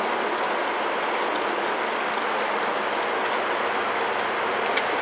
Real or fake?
real